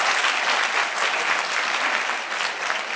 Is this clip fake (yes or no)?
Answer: no